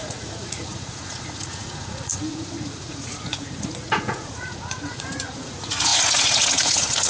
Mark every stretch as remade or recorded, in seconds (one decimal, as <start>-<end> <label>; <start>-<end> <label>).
0.0-7.1 remade